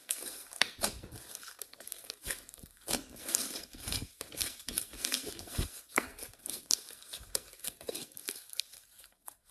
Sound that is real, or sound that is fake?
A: fake